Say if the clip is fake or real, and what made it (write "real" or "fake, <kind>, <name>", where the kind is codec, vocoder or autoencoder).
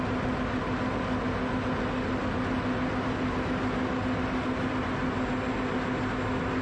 real